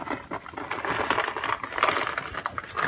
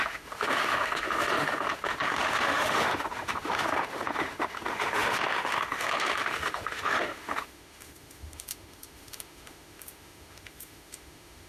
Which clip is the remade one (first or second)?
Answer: second